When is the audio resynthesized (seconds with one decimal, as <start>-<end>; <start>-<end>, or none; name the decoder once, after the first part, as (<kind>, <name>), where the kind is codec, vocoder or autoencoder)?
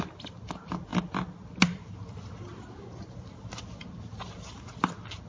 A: none